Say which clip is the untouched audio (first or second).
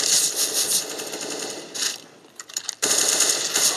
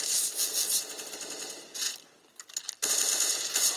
second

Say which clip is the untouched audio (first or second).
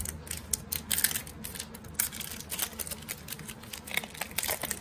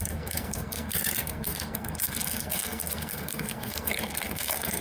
first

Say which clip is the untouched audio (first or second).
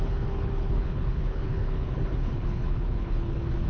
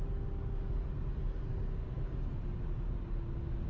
second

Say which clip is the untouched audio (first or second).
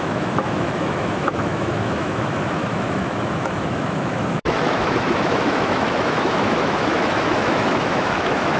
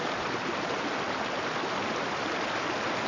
second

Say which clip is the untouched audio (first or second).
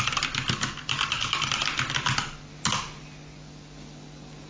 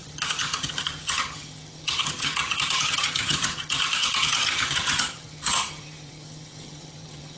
first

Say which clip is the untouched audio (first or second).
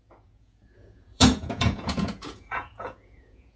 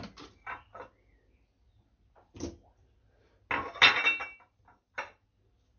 second